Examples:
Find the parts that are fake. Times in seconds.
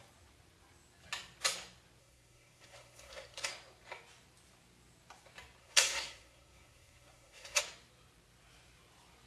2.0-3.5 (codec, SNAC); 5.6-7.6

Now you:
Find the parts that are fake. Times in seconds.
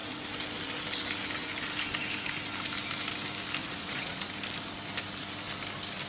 3.6-4.3 (vocoder, Vocos)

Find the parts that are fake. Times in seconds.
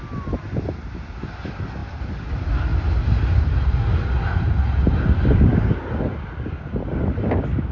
1.8-2.3 (vocoder, BigVGAN v2)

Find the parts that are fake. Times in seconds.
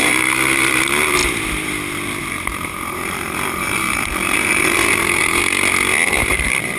0.0-1.2 (vocoder, BigVGAN v2); 2.2-5.4; 6.2-6.8